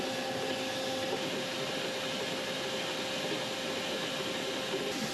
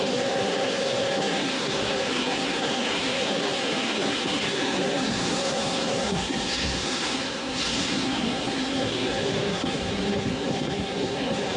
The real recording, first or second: first